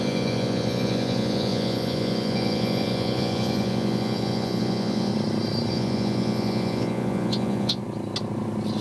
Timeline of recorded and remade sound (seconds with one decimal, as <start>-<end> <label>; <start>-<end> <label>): 0.0-5.1 remade; 5.1-5.7 recorded; 5.7-7.8 remade; 7.8-8.8 recorded